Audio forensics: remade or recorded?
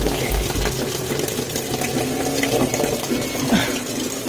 recorded